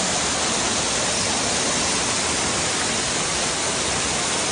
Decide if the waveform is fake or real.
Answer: real